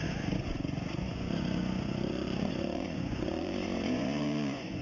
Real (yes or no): no